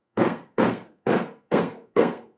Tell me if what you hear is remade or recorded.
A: remade